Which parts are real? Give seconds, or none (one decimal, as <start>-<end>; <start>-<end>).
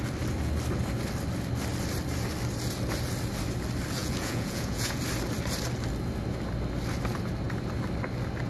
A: 0.0-4.0; 5.0-8.5